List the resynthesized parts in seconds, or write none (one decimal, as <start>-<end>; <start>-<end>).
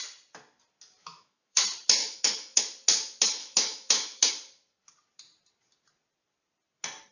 1.0-1.6; 2.0-2.6; 3.4-4.3